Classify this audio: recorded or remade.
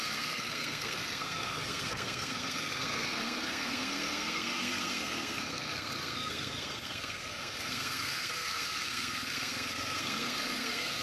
remade